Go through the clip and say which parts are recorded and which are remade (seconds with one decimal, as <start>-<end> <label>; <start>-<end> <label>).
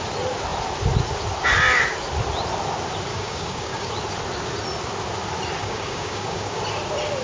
0.0-3.1 recorded; 3.1-3.9 remade; 3.9-5.6 recorded; 5.6-6.6 remade; 6.6-7.2 recorded